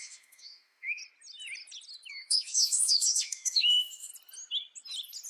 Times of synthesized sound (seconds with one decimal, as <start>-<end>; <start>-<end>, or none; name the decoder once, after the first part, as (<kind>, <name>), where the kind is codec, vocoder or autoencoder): 0.0-1.0 (autoencoder, DAC-VAE); 2.1-4.1